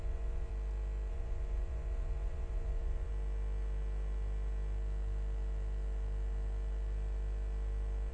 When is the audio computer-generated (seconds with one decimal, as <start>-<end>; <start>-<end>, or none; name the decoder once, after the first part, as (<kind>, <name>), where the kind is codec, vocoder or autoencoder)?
0.0-0.5 (vocoder, Vocos); 1.1-3.1